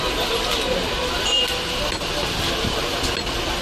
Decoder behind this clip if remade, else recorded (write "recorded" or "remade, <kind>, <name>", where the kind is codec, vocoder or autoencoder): recorded